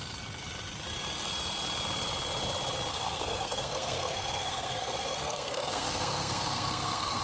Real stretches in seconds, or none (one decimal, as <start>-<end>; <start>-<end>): 0.0-2.9